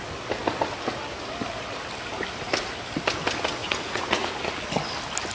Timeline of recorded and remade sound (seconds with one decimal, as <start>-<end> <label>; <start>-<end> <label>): 0.0-3.6 recorded; 3.6-4.5 remade; 4.5-5.3 recorded